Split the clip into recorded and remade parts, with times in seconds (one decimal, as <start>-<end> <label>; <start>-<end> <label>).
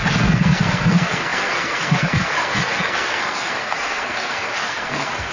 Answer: 0.0-5.3 remade